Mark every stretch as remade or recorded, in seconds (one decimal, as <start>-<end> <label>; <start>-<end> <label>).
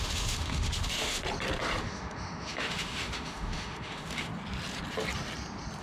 0.0-1.2 remade; 1.2-1.8 recorded; 1.8-4.3 remade; 4.3-5.8 recorded